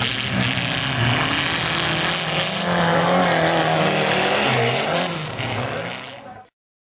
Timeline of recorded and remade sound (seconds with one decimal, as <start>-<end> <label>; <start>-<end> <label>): 0.0-6.9 recorded